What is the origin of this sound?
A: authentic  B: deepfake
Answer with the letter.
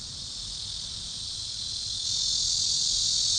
A